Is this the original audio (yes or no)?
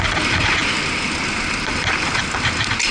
yes